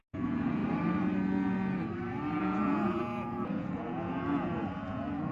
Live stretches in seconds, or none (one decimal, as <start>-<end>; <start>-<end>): 0.6-2.4